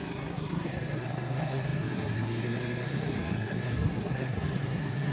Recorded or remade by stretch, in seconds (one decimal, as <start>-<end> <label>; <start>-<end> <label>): 0.0-5.1 remade